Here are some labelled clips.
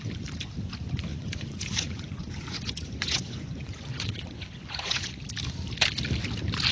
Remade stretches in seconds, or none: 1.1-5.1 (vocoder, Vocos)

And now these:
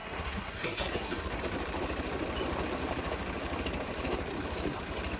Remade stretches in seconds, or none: 0.0-1.4 (codec, SNAC)

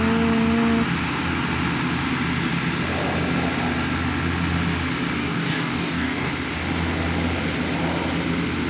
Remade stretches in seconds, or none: 5.2-6.3 (codec, DAC)

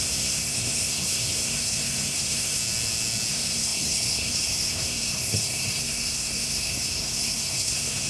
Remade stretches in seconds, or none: 0.0-2.6 (codec, SNAC); 3.3-8.1

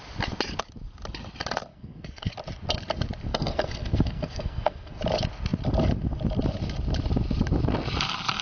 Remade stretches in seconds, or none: 1.7-2.3 (codec, SNAC); 3.3-5.0